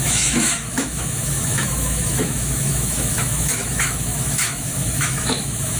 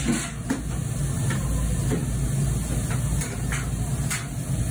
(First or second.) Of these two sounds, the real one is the second